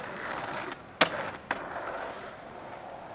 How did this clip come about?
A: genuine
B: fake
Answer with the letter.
A